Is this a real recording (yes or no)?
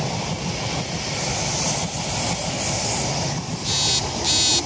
yes